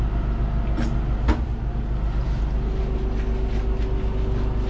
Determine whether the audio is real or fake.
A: real